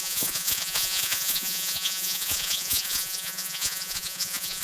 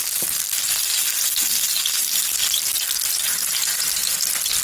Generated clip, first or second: first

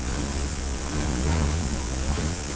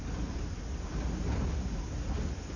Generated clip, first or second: first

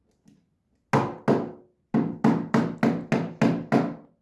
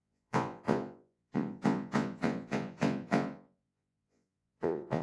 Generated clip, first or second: second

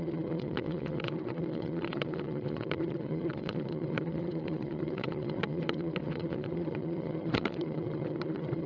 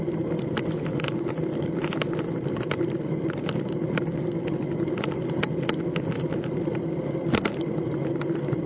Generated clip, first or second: first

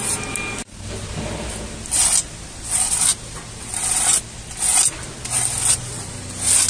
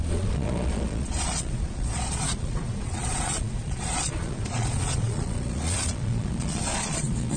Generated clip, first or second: second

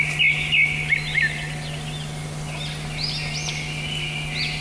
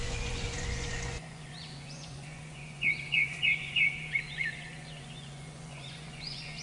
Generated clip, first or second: second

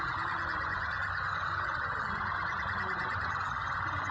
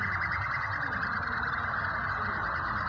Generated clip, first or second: first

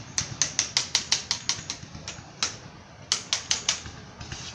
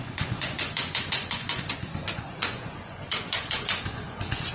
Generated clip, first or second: second